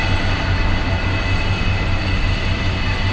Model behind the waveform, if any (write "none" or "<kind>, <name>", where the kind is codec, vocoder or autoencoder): none